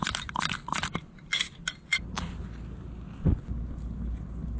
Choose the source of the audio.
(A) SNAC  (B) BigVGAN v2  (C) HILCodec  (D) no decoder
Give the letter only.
D